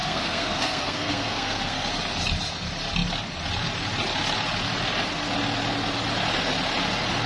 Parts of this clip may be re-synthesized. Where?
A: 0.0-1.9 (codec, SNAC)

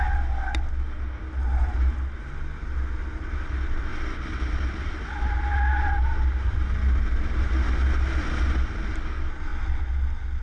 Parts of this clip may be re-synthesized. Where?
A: none

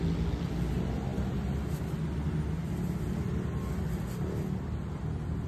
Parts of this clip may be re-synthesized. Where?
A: none

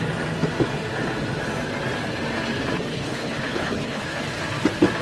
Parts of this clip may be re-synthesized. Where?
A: 2.9-4.2 (codec, HILCodec)